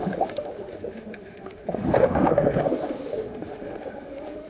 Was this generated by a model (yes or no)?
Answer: yes